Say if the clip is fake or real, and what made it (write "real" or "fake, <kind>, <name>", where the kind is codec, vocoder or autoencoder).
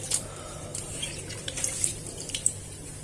fake, vocoder, BigVGAN v2